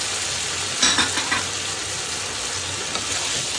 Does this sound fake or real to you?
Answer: real